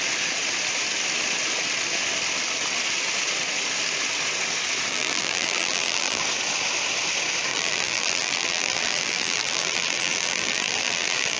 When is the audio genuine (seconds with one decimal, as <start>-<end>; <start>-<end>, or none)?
0.0-4.9; 6.2-7.5